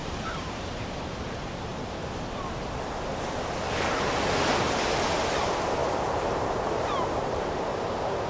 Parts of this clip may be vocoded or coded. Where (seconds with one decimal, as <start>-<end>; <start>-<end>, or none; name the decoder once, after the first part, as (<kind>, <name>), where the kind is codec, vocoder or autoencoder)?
0.0-1.7 (vocoder, BigVGAN v2); 5.3-8.3